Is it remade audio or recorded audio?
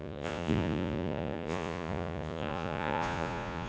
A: remade